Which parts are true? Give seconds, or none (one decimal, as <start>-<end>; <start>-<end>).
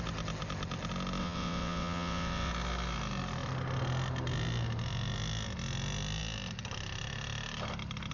0.0-1.2; 2.5-8.1